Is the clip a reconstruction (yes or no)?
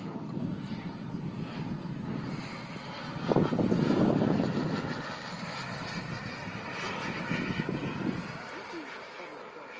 no